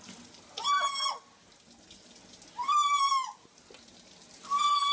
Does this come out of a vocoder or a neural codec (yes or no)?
no